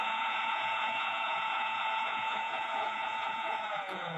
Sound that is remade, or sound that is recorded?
remade